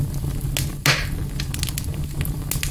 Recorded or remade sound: recorded